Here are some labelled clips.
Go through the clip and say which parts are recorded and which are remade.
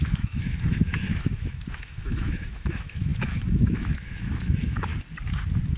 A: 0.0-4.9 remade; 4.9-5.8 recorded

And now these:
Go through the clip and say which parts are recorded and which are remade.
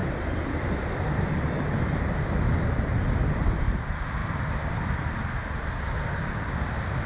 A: 0.0-2.0 remade; 2.0-4.2 recorded; 4.2-4.7 remade; 4.7-7.1 recorded